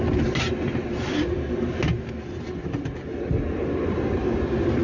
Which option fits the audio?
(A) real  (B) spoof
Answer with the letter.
A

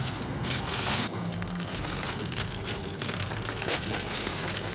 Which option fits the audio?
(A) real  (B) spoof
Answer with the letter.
B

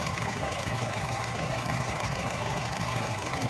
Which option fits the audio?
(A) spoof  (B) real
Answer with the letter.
A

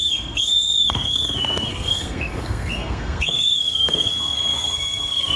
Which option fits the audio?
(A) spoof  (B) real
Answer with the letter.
A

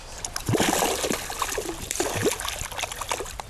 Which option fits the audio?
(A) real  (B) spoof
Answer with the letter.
A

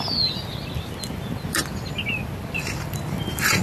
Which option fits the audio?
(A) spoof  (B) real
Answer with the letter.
B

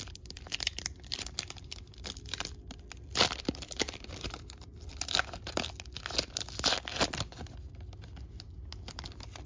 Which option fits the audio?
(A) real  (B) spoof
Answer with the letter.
A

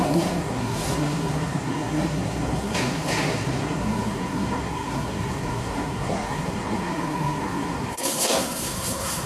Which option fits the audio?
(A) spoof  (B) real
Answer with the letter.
A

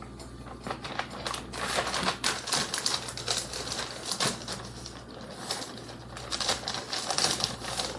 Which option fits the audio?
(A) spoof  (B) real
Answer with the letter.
B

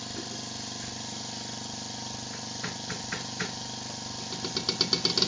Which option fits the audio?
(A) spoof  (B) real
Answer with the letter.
B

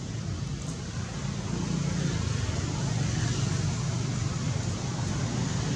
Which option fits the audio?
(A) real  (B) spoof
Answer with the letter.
A